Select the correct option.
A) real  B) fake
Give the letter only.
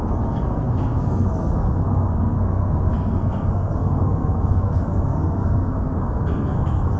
B